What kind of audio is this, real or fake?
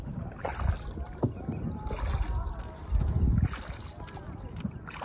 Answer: real